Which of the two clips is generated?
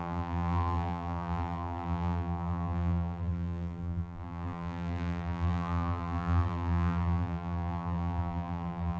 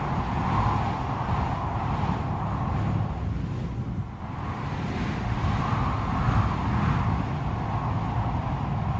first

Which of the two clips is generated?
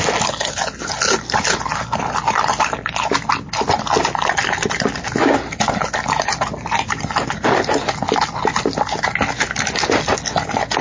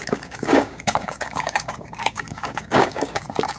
second